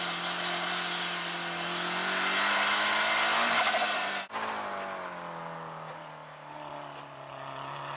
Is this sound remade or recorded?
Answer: recorded